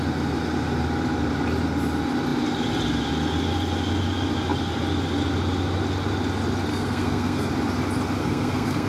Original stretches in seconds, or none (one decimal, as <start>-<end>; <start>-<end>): 0.0-6.7; 7.5-8.2

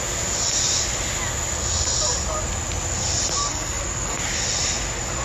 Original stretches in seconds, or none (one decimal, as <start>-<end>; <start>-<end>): 0.0-3.5; 4.2-5.2

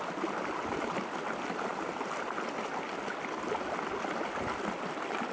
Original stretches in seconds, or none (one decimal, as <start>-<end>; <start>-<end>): 0.0-5.3

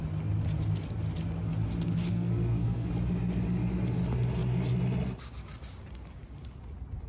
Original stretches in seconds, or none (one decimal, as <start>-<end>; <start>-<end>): 0.0-2.1; 2.9-7.1

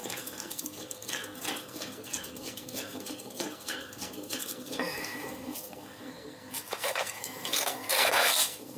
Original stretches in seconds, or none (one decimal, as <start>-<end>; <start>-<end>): none